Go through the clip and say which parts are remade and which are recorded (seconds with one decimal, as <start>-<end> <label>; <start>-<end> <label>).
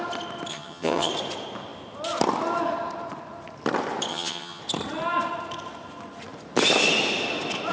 0.0-0.5 recorded; 0.5-1.1 remade; 1.1-4.1 recorded; 4.1-4.6 remade; 4.6-7.7 recorded